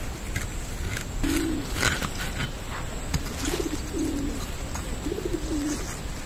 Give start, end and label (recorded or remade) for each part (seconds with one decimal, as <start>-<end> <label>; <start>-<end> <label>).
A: 0.0-6.3 recorded